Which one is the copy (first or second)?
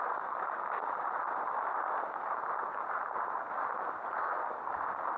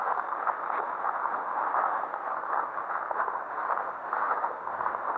second